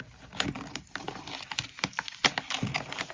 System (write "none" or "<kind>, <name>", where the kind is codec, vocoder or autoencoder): none